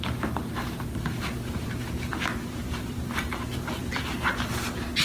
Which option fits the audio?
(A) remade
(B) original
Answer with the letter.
A